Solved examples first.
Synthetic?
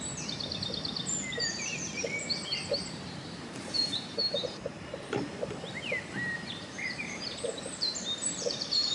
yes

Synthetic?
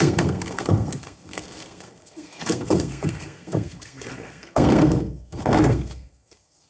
yes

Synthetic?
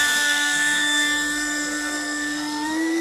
yes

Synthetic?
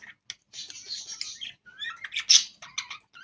no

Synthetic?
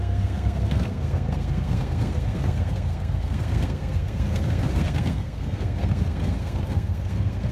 yes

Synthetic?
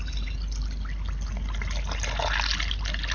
no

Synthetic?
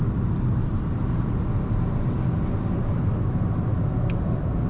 no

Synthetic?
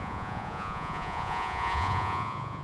yes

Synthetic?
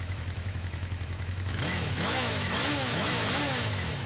yes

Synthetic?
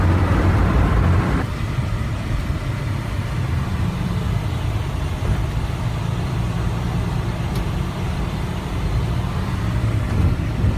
yes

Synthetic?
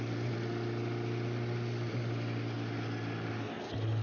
no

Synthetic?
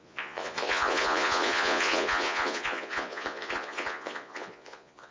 yes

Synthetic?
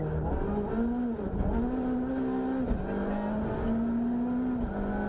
no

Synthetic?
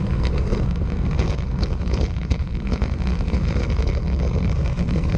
yes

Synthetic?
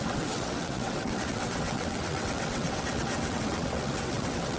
yes